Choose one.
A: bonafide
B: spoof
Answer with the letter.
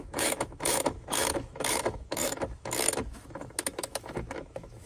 B